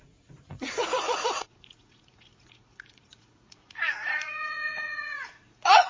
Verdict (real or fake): fake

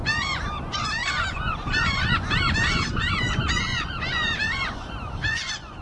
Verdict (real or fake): fake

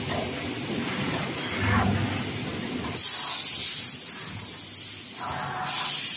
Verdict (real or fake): real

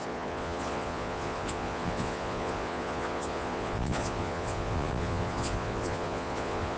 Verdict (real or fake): fake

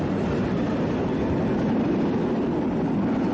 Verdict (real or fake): real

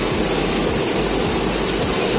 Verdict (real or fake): real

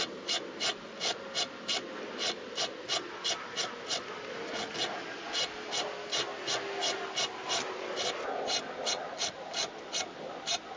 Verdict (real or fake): real